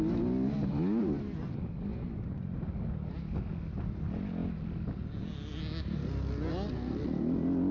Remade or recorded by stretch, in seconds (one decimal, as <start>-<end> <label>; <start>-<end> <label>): 0.0-7.7 recorded

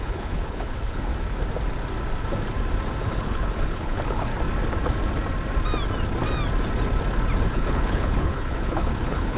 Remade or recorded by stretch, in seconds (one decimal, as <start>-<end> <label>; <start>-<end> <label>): 0.0-1.1 remade; 1.1-3.0 recorded; 3.0-4.3 remade; 4.3-7.5 recorded; 7.5-9.4 remade